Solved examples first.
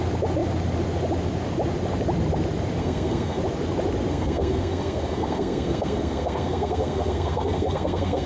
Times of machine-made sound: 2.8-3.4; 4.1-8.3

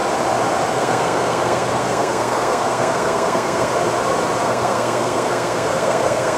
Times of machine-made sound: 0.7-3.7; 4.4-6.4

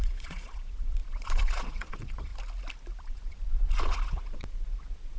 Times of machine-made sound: 0.0-2.3; 3.0-5.2

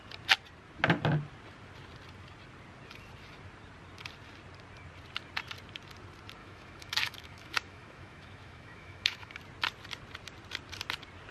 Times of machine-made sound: 6.4-9.3